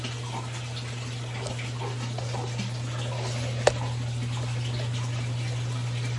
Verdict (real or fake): real